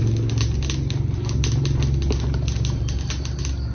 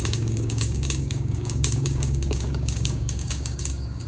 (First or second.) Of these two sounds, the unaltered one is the first